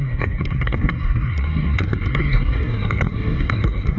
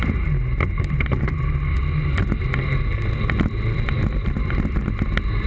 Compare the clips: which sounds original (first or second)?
second